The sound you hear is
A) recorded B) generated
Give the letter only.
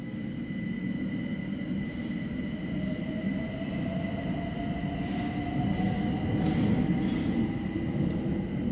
A